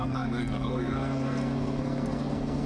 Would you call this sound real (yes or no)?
no